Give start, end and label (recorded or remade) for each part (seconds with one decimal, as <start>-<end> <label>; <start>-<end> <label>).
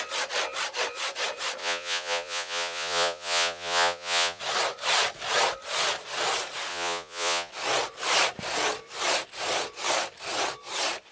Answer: 0.0-1.6 recorded; 1.6-4.4 remade; 4.4-6.7 recorded; 6.7-7.5 remade; 7.5-11.1 recorded